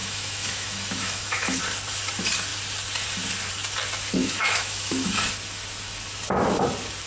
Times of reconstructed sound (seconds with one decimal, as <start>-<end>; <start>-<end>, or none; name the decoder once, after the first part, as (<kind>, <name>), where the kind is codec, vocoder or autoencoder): 0.0-1.6 (autoencoder, DAC-VAE); 4.2-5.3